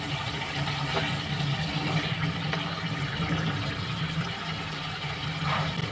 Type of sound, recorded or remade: recorded